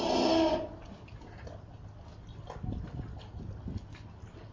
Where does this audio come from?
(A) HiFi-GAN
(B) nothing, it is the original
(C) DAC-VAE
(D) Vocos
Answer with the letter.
B